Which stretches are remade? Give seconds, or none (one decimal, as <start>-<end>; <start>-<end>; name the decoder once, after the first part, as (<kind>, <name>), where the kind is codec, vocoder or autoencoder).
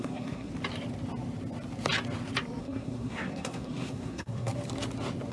0.0-0.5 (codec, SNAC); 2.6-4.5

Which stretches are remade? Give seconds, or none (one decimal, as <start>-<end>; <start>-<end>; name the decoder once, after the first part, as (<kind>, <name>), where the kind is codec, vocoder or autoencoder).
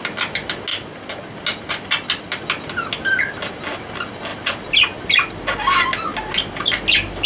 none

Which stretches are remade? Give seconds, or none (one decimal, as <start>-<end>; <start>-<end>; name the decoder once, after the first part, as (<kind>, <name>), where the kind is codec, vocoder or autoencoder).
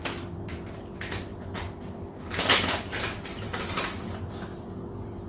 none